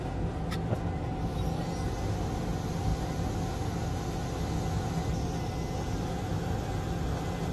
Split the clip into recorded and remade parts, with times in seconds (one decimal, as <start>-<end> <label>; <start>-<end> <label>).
0.0-7.5 recorded